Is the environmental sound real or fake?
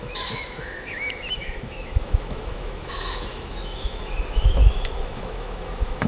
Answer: fake